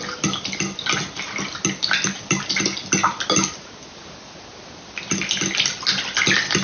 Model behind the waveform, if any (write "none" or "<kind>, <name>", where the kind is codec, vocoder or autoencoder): none